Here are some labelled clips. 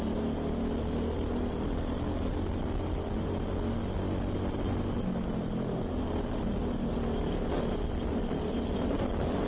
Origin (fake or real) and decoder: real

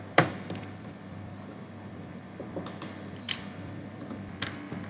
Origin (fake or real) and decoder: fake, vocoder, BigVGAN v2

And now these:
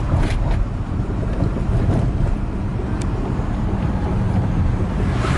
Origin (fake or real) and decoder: fake, vocoder, BigVGAN v2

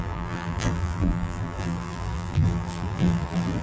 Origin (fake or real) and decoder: fake, vocoder, BigVGAN v2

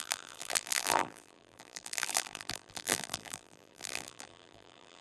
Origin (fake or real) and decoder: fake, vocoder, BigVGAN v2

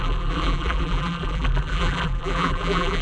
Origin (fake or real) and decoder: fake, vocoder, BigVGAN v2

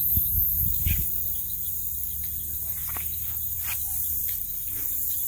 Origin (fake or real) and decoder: real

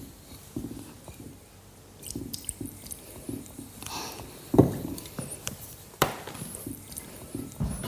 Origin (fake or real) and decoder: real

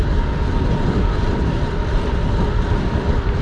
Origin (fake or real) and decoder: real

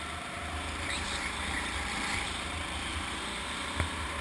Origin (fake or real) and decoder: fake, vocoder, BigVGAN v2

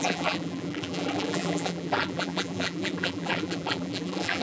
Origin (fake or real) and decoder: fake, vocoder, BigVGAN v2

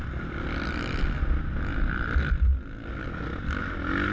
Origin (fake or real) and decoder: real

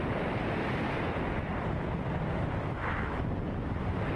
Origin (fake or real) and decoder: fake, vocoder, BigVGAN v2